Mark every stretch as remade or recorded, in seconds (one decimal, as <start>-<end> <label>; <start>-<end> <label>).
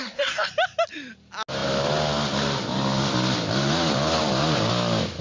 0.0-0.5 remade; 0.5-5.2 recorded